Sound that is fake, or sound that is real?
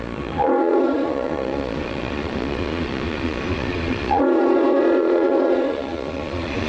fake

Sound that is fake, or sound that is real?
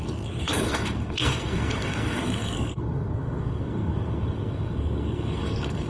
fake